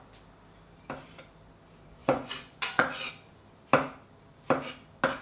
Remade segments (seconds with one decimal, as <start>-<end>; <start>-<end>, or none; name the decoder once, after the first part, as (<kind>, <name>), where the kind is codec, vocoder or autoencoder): 2.0-3.1 (vocoder, Vocos)